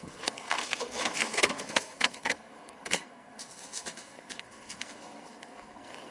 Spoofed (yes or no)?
yes